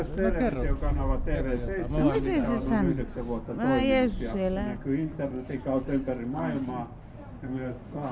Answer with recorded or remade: recorded